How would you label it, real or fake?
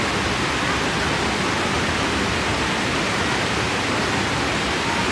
real